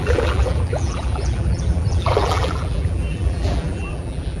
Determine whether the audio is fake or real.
fake